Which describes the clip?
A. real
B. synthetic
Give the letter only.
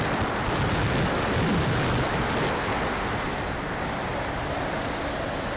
A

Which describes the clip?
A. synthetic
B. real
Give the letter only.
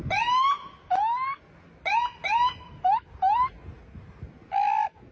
B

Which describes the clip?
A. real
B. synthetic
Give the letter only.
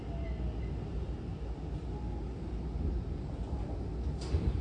A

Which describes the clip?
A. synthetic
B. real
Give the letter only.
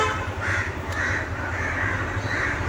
A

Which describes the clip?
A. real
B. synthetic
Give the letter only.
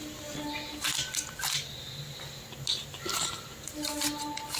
A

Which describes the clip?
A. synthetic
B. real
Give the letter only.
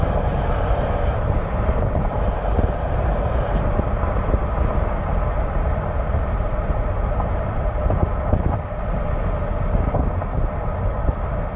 B